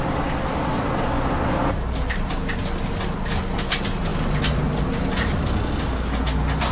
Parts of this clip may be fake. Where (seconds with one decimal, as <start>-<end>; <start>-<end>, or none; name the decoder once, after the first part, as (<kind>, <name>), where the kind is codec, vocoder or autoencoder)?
none